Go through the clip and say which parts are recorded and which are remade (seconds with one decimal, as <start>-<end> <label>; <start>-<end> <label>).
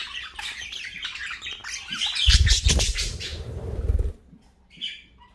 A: 0.0-1.6 remade; 1.6-2.5 recorded; 2.5-3.3 remade; 3.3-4.1 recorded; 4.1-5.3 remade